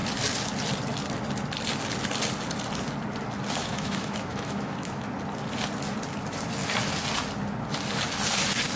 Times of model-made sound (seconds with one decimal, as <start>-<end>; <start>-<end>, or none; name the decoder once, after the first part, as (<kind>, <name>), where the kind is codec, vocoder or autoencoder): 3.6-5.1 (autoencoder, DAC-VAE)